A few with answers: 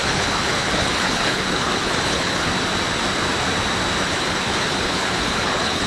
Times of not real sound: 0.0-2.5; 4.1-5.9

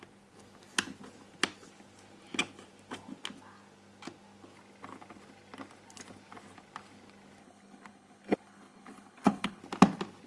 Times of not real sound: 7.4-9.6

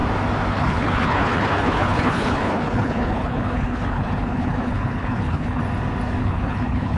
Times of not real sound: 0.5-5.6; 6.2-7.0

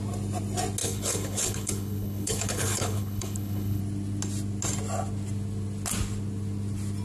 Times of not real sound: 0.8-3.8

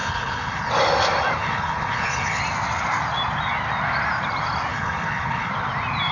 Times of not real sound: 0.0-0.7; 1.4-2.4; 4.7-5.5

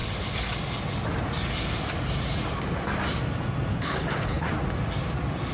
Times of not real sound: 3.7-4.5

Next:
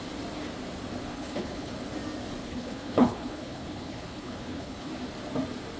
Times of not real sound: 1.1-1.7; 2.4-4.9